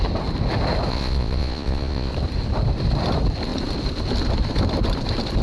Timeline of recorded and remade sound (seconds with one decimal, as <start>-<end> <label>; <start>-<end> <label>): 0.0-0.9 recorded; 0.9-2.1 remade; 2.1-5.4 recorded